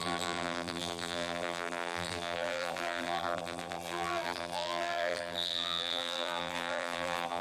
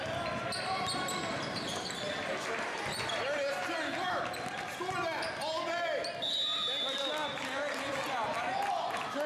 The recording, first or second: second